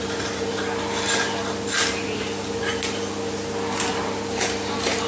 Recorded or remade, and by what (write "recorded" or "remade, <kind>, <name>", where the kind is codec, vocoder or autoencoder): recorded